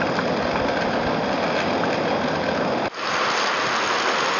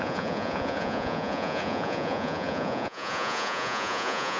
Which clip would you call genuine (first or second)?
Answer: first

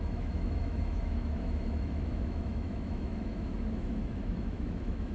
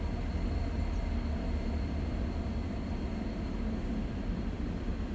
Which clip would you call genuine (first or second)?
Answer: second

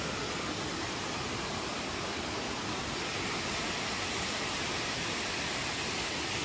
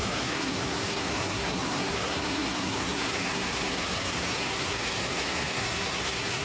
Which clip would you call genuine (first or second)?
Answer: first